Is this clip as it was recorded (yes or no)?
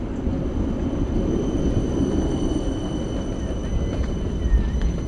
yes